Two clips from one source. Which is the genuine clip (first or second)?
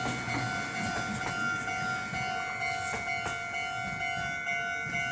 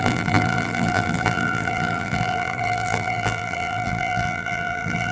first